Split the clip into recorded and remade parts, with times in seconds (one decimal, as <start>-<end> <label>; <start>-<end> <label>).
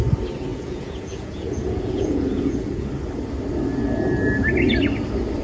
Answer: 0.0-0.5 recorded; 0.5-2.9 remade; 2.9-5.4 recorded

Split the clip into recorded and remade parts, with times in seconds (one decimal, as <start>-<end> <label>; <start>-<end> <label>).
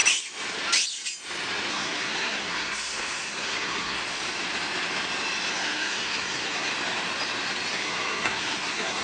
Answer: 0.0-1.7 recorded; 1.7-4.0 remade; 4.0-5.5 recorded; 5.5-6.7 remade; 6.7-7.7 recorded; 7.7-9.0 remade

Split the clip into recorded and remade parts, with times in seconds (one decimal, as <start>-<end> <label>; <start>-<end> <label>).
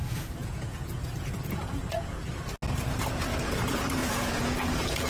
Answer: 0.0-2.3 remade; 2.3-4.0 recorded; 4.0-5.1 remade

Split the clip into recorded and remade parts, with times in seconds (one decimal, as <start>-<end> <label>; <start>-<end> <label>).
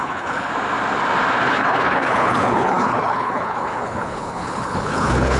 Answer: 0.0-0.5 remade; 0.5-1.5 recorded; 1.5-5.4 remade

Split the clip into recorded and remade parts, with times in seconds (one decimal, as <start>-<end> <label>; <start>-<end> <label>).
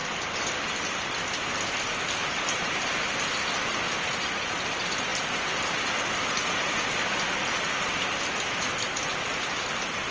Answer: 0.0-3.8 remade; 3.8-5.1 recorded; 5.1-8.2 remade; 8.2-10.1 recorded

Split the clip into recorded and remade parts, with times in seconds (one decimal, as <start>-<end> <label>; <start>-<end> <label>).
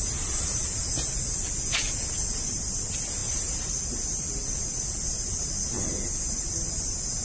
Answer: 0.0-7.2 recorded